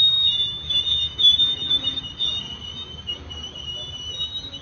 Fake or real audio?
real